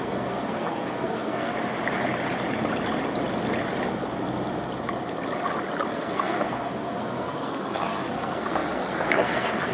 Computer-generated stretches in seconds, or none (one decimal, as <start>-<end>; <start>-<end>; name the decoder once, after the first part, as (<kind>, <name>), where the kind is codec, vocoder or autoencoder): 0.0-1.5 (codec, SNAC); 5.9-9.7